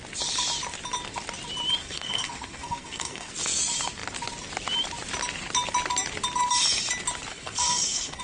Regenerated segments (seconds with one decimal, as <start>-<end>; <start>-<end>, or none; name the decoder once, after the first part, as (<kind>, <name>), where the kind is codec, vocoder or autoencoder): 1.8-3.6 (codec, SNAC); 7.3-8.2

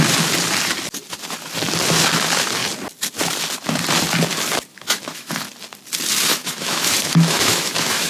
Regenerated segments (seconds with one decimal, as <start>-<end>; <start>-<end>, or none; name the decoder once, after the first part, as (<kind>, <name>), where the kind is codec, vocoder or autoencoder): 4.7-5.3 (autoencoder, DAC-VAE); 6.3-8.1

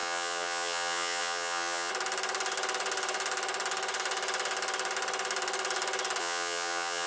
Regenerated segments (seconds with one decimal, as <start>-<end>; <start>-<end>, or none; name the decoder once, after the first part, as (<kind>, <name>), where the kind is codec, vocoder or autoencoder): 0.0-1.9 (vocoder, HiFi-GAN); 6.2-7.1

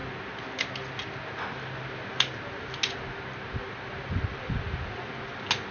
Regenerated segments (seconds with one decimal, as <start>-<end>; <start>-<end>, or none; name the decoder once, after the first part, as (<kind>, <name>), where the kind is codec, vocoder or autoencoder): none

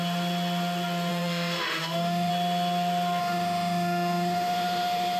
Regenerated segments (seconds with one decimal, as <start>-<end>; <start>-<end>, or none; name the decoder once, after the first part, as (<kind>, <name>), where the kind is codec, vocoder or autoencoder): 1.1-2.3 (autoencoder, DAC-VAE); 3.2-5.2

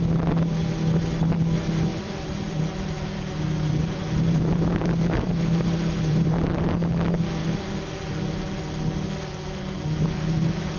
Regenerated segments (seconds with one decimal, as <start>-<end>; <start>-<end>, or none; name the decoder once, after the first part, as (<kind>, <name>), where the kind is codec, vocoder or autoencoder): 1.9-6.7 (vocoder, BigVGAN v2)